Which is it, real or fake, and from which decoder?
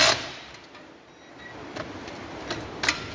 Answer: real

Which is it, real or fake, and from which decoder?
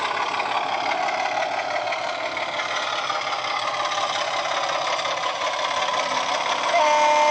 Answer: real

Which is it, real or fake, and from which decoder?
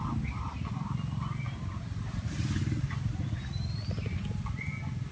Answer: real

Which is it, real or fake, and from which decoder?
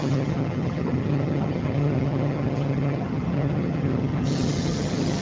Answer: fake, vocoder, HiFi-GAN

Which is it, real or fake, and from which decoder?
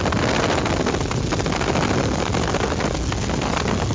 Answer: real